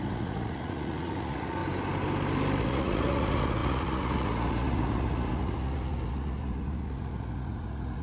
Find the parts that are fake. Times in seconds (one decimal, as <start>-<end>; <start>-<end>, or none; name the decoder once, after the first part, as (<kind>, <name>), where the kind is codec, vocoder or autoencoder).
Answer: 0.0-1.6 (vocoder, Vocos); 2.6-8.0